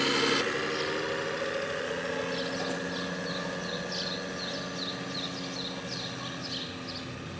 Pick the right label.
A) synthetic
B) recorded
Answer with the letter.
B